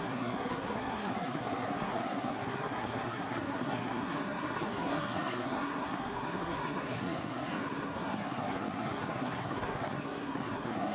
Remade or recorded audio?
remade